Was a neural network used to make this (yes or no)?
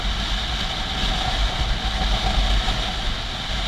no